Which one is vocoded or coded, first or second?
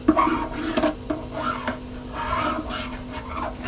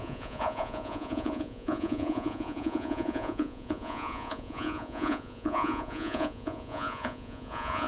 second